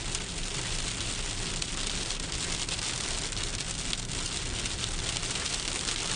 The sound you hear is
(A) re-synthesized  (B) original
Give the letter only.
B